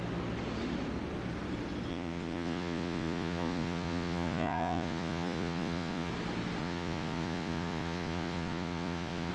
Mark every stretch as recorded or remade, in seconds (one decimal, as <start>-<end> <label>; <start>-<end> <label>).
0.0-1.9 recorded; 1.9-6.1 remade; 6.1-6.6 recorded; 6.6-9.3 remade